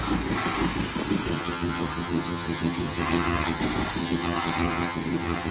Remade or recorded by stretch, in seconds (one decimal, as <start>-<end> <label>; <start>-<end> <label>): 0.0-1.3 recorded; 1.3-3.6 remade; 3.6-4.0 recorded; 4.0-5.5 remade